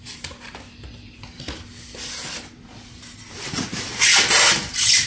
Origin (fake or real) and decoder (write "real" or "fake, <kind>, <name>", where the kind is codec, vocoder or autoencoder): real